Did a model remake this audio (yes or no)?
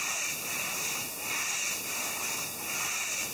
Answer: no